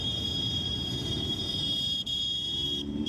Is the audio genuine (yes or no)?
no